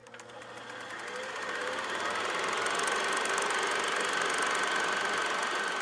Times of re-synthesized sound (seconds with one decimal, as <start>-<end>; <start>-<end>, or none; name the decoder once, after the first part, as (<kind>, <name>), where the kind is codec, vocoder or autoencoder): none